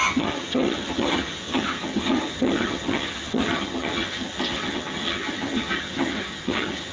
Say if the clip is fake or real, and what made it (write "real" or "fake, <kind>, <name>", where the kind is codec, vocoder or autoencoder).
fake, vocoder, HiFi-GAN